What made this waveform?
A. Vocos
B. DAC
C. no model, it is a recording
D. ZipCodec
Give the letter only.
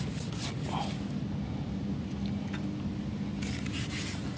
C